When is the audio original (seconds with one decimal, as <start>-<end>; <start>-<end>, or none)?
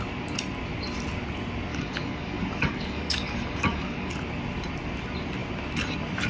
0.0-1.7; 4.1-6.3